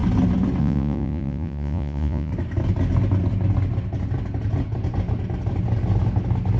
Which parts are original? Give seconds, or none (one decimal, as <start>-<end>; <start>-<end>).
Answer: 0.0-0.6; 2.3-6.6